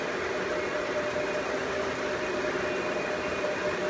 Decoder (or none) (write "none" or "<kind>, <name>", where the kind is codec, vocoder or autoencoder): none